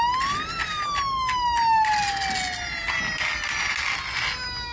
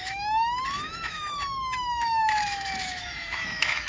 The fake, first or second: second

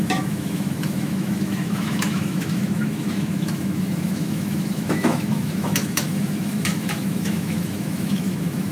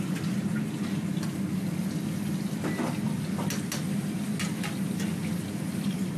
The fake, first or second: first